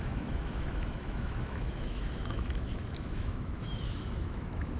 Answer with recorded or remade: remade